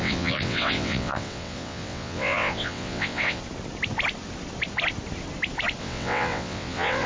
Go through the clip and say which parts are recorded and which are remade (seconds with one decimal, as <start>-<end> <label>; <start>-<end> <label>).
0.0-3.4 remade; 3.4-5.8 recorded; 5.8-7.1 remade